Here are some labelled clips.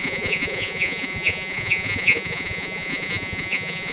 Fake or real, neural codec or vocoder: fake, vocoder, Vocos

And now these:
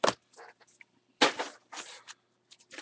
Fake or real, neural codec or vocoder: real